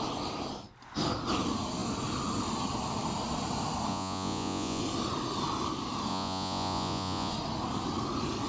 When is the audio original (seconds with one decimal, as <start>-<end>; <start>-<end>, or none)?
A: 0.0-3.9; 4.8-6.1; 7.3-8.5

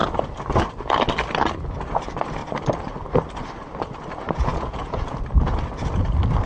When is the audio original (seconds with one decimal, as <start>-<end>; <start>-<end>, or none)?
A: 0.0-4.5; 5.2-6.5